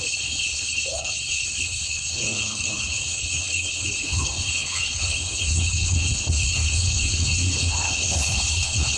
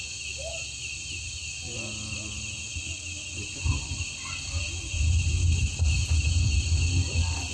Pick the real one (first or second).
second